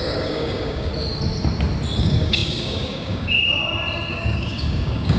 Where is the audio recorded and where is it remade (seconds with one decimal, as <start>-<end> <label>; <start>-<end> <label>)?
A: 0.0-0.9 remade; 0.9-2.0 recorded; 2.0-3.6 remade; 3.6-4.1 recorded; 4.1-5.2 remade